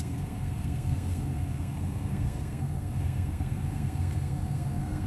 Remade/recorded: remade